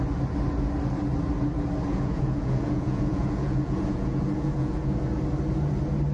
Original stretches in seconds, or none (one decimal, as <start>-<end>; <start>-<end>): 0.0-1.9; 5.1-6.1